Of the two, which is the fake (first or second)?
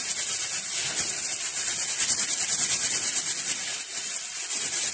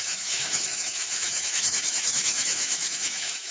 second